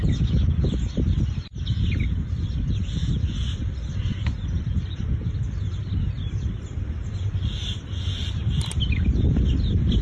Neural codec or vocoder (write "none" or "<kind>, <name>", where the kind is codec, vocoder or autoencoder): vocoder, BigVGAN v2